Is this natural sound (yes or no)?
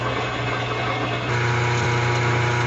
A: yes